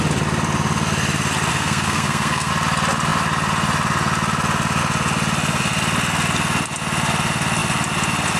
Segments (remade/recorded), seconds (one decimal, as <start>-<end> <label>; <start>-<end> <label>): 0.0-1.5 recorded; 1.5-2.5 remade; 2.5-8.4 recorded